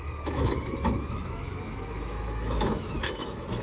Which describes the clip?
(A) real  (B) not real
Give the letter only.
B